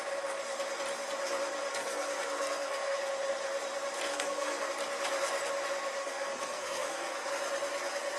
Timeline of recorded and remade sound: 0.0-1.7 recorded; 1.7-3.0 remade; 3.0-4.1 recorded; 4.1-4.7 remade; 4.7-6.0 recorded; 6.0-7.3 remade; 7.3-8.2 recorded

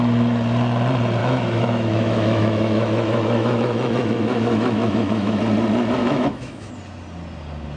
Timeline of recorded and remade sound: 0.0-1.2 recorded; 1.2-5.4 remade; 5.4-6.0 recorded; 6.0-6.7 remade; 6.7-7.8 recorded